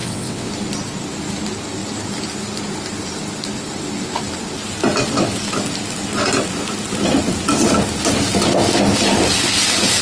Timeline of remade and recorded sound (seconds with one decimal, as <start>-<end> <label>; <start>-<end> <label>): 0.0-0.5 remade; 0.5-10.0 recorded